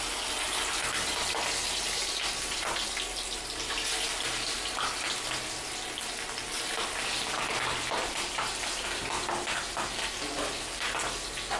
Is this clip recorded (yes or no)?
yes